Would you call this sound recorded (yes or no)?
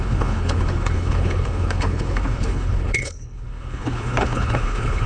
no